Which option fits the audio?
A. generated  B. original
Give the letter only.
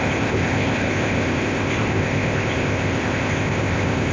A